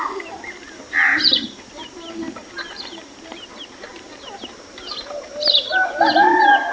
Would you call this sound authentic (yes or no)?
no